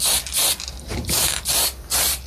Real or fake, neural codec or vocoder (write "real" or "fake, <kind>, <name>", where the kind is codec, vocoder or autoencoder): real